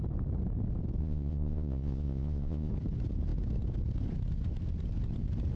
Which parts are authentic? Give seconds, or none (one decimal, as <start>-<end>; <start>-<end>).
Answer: 0.0-1.0; 2.7-5.6